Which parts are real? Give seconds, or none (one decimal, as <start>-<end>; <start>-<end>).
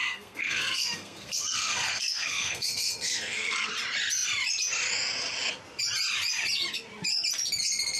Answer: 3.7-8.0